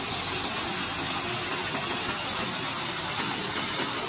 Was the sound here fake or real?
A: real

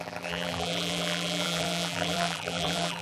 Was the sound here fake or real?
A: fake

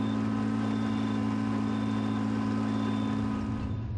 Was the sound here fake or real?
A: real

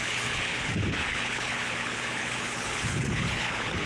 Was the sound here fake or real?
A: fake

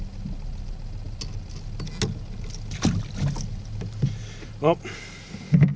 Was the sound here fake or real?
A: real